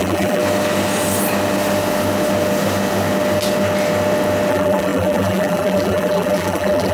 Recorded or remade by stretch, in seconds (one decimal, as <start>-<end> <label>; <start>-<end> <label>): 0.0-0.4 remade; 0.4-4.5 recorded; 4.5-6.9 remade